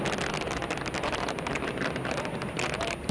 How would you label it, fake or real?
real